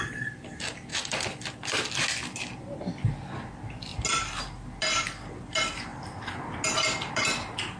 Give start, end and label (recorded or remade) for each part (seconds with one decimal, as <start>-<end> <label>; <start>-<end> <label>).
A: 0.0-7.8 recorded